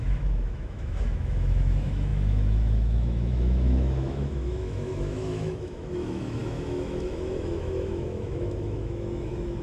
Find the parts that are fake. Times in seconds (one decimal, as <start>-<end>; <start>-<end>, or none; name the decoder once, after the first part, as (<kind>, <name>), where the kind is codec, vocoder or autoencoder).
0.0-9.6 (autoencoder, DAC-VAE)